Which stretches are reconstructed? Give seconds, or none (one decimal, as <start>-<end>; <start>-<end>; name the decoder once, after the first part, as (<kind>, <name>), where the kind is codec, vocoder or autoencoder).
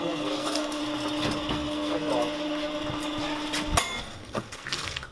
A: 0.0-0.8 (codec, SNAC); 1.5-2.1; 4.0-5.1